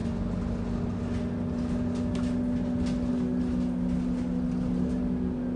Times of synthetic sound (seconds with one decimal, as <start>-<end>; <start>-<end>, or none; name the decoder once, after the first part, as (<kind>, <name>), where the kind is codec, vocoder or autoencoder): none